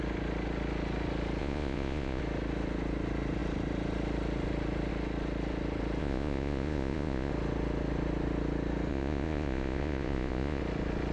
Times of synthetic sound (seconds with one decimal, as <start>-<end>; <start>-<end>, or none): 1.4-2.2; 6.0-7.3; 8.9-10.6